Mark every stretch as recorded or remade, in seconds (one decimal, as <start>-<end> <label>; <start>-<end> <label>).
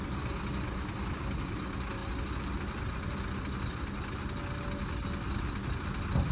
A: 0.0-6.3 recorded